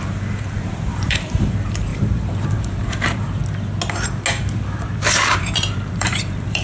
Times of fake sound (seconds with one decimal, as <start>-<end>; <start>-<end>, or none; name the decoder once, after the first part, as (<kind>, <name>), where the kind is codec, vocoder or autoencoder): 0.0-3.4 (vocoder, BigVGAN v2); 5.1-6.6